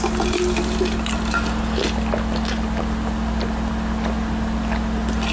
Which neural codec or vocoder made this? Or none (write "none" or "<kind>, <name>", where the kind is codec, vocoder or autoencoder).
none